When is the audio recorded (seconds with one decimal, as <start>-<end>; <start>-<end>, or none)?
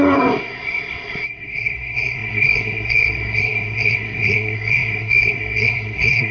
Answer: none